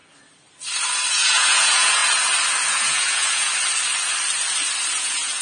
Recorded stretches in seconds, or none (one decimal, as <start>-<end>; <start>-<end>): 0.0-1.1; 2.0-2.7; 3.5-4.9